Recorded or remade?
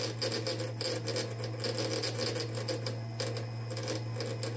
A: recorded